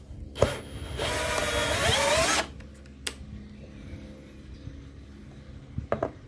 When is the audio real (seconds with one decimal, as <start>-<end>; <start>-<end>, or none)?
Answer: 0.0-6.3